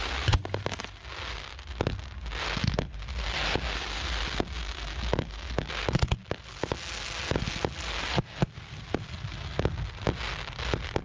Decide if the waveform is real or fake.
real